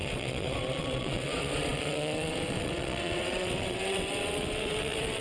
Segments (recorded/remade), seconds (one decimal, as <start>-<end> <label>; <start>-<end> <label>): 0.0-5.2 remade